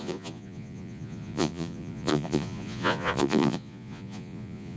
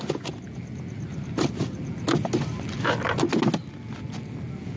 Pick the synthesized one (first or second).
first